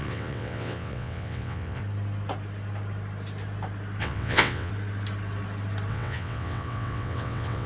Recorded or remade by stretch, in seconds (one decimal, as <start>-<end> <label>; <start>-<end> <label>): 0.0-1.8 remade; 1.8-4.0 recorded; 4.0-4.7 remade; 4.7-5.9 recorded; 5.9-7.7 remade